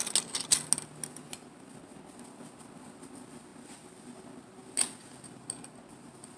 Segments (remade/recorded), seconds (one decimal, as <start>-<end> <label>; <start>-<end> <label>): 0.0-6.4 recorded